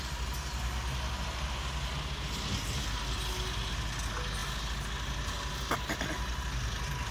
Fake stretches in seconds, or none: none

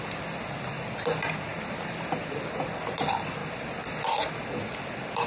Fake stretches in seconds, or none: 0.0-3.4; 4.5-5.3